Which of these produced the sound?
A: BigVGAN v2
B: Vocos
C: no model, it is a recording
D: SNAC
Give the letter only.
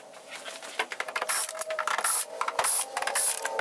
C